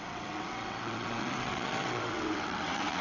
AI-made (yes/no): yes